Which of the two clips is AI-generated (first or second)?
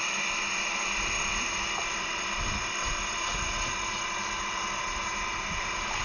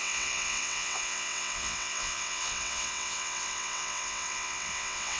second